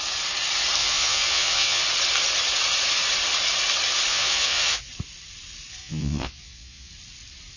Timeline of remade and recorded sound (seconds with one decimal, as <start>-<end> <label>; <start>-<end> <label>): 0.0-0.8 recorded; 0.8-1.8 remade; 1.8-4.1 recorded; 4.1-4.9 remade; 4.9-5.8 recorded; 5.8-6.9 remade; 6.9-7.6 recorded